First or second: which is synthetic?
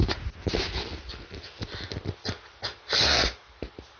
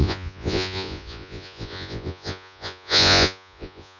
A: second